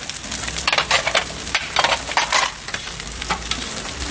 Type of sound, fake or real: fake